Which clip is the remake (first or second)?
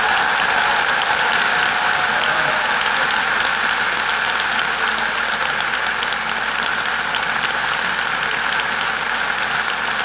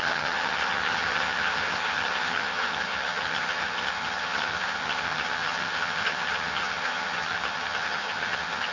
second